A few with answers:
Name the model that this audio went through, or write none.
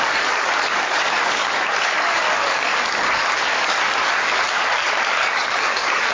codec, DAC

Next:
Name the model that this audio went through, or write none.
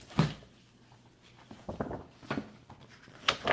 none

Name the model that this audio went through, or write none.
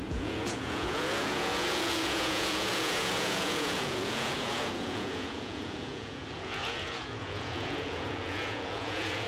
vocoder, Vocos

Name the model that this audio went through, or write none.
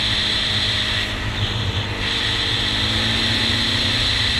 none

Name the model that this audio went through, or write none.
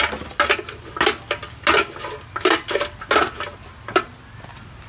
none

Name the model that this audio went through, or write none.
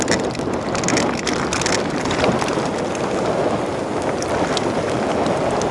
none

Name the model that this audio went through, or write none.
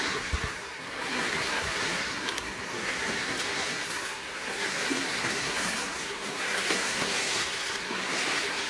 codec, SNAC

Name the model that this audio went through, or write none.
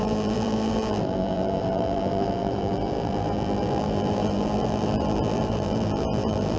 vocoder, BigVGAN v2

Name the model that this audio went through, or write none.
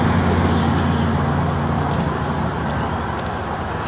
none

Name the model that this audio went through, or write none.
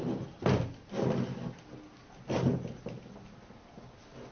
none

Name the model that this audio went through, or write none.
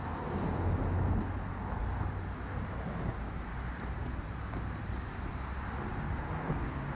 none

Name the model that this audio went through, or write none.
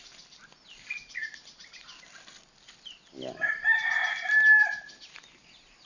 none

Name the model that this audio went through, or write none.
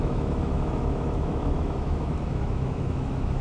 autoencoder, DAC-VAE